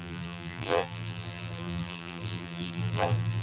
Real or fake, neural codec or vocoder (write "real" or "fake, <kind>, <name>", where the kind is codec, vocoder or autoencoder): fake, vocoder, BigVGAN v2